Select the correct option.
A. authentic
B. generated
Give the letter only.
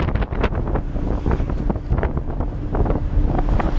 A